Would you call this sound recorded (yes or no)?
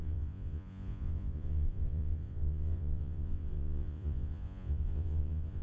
no